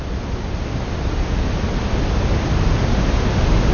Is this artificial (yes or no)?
no